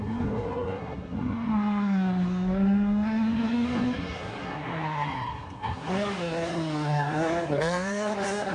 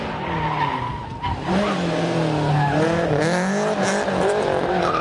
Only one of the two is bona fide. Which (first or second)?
second